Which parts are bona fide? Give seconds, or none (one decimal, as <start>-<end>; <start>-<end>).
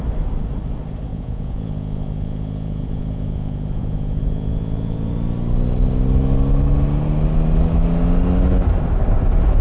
0.0-1.1; 5.1-9.6